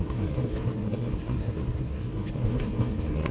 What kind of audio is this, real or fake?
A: fake